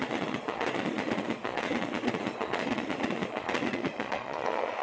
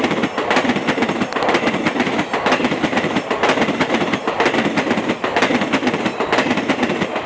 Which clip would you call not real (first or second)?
first